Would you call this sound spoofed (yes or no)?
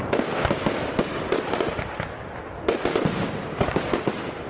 no